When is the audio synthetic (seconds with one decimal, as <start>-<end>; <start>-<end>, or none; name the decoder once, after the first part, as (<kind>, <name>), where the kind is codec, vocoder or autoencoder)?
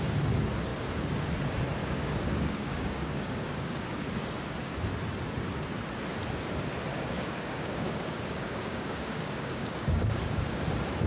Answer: 1.8-4.0 (codec, DAC); 6.9-10.6